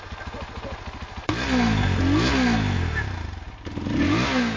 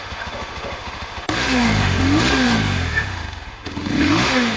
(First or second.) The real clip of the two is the first